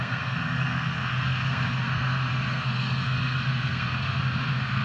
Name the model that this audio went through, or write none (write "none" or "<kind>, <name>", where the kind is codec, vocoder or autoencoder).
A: codec, SNAC